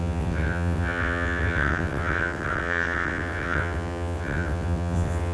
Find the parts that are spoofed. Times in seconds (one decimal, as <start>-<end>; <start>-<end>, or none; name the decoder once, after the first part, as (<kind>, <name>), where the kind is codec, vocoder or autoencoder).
0.0-5.3 (vocoder, WaveNeXt)